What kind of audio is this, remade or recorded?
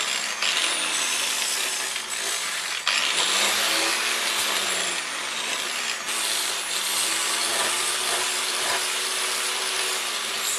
recorded